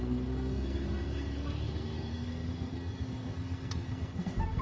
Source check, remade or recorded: remade